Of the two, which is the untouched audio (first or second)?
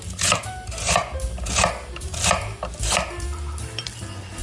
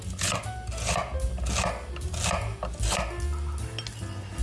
second